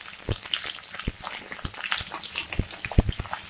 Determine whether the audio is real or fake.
real